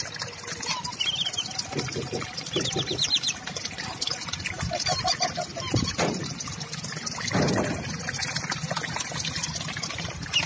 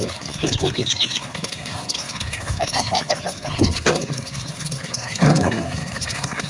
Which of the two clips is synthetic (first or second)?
second